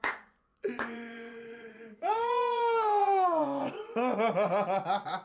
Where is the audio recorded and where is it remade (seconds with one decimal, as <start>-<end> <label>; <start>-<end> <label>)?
0.0-5.2 remade